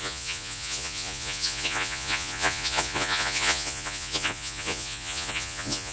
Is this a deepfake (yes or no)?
yes